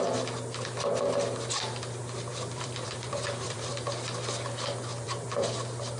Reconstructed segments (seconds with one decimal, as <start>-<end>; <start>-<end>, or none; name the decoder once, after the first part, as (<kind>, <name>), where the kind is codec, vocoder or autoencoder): 2.3-3.7 (vocoder, BigVGAN v2); 4.9-5.5